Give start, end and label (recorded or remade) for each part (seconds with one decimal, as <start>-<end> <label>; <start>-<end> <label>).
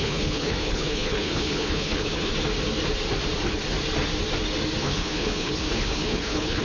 0.0-2.3 remade; 2.3-4.8 recorded; 4.8-6.6 remade